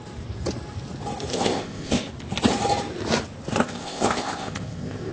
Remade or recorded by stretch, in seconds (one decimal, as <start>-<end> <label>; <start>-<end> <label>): 0.0-1.3 recorded; 1.3-2.1 remade; 2.1-3.5 recorded; 3.5-5.1 remade

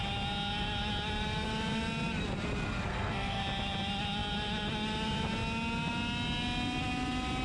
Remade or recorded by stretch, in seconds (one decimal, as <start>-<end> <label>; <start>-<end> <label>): 0.0-2.9 recorded; 2.9-3.4 remade; 3.4-7.4 recorded

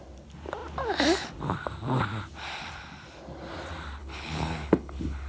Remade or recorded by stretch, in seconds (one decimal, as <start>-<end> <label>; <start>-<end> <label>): 0.0-4.0 recorded; 4.0-5.3 remade

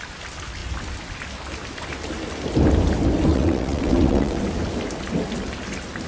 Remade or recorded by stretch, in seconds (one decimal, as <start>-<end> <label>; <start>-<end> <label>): 0.0-3.3 recorded; 3.3-4.4 remade; 4.4-6.1 recorded

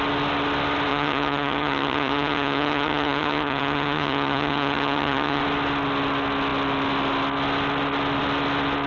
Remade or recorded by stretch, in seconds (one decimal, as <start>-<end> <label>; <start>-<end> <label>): 0.0-0.9 recorded; 0.9-5.4 remade; 5.4-8.9 recorded

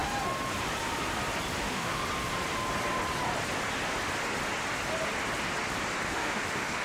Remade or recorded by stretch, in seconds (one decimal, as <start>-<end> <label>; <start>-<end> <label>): 0.0-1.6 recorded; 1.6-2.0 remade; 2.0-6.1 recorded; 6.1-6.8 remade

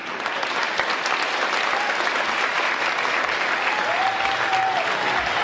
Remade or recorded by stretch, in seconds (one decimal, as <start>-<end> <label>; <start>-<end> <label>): 0.0-5.4 recorded

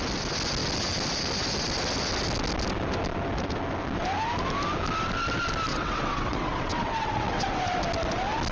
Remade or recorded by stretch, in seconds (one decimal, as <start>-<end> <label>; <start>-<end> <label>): 0.0-5.7 recorded; 5.7-7.8 remade; 7.8-8.5 recorded